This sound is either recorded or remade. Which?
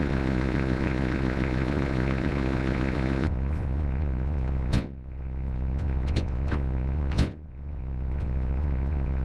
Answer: remade